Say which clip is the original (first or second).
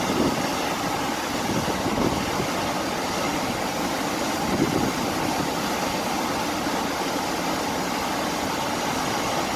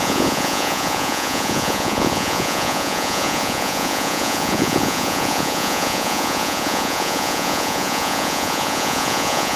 first